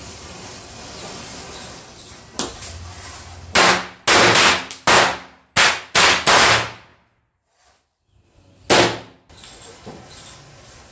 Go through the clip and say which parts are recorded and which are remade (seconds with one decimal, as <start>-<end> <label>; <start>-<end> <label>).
0.0-10.9 recorded